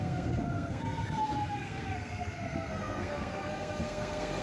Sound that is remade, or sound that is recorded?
remade